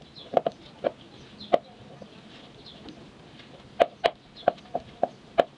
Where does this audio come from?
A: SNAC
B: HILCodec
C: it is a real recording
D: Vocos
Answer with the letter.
C